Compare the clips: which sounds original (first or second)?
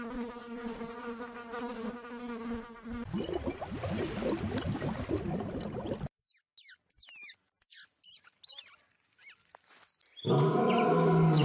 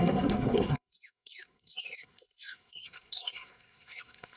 first